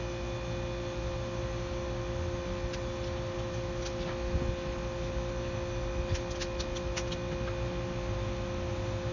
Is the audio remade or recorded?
recorded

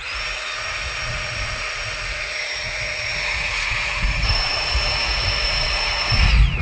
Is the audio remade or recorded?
remade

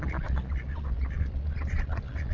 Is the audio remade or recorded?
remade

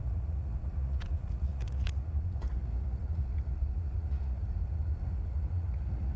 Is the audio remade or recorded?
remade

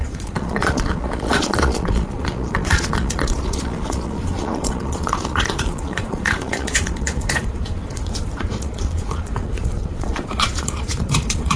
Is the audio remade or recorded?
remade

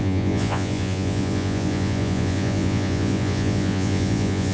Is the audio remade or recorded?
remade